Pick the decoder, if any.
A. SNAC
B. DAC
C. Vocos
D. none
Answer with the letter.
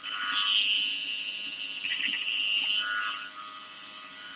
D